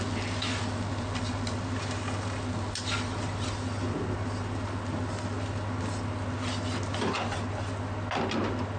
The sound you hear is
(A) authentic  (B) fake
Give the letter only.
A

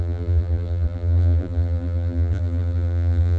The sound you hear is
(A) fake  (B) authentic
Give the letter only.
A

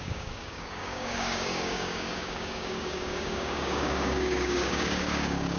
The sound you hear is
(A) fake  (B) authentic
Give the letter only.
A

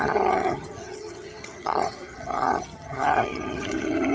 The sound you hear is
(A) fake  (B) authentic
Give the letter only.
A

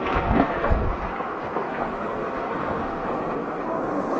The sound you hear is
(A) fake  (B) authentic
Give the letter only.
A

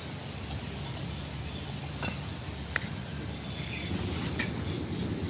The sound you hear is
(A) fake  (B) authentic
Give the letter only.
A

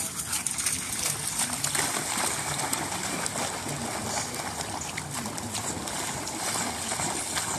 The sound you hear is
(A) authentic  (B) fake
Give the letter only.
A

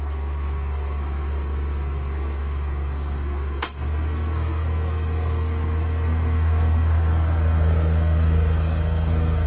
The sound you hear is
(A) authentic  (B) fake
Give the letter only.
B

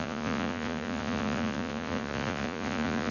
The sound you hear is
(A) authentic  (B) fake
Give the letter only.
B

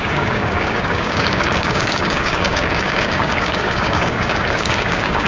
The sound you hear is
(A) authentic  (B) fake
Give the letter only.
B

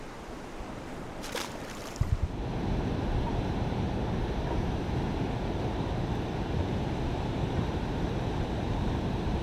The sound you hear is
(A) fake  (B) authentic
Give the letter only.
A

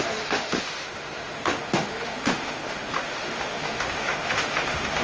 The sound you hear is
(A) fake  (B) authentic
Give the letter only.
A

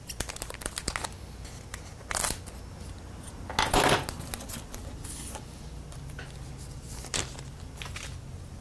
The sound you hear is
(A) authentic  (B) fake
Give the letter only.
A